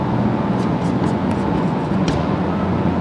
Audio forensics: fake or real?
fake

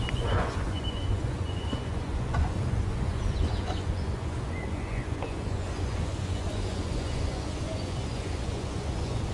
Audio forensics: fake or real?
fake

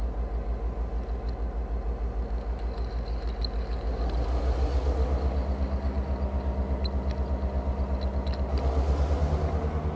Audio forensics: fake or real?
real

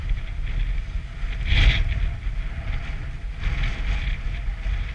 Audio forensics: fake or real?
real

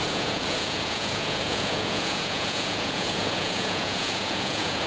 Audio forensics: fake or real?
fake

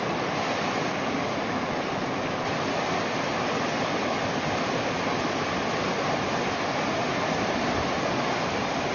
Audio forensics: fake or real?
real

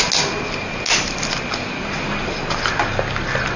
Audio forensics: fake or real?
real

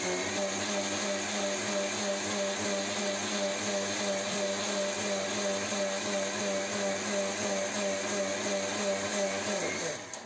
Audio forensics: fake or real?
real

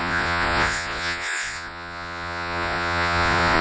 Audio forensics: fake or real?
fake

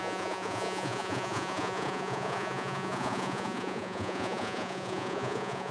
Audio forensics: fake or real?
fake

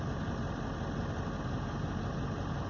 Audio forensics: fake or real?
real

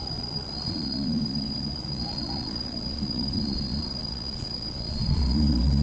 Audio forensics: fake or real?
fake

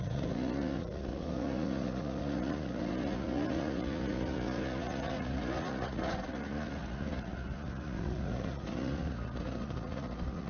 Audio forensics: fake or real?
fake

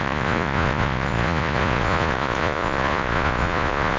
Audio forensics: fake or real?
fake